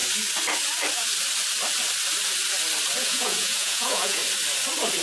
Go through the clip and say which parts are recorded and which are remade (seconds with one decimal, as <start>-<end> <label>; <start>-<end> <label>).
0.0-3.0 recorded; 3.0-4.2 remade; 4.2-5.0 recorded